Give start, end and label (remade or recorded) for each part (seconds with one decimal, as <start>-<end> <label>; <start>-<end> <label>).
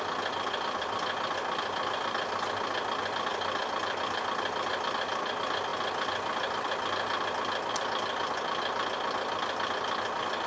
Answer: 0.0-10.5 recorded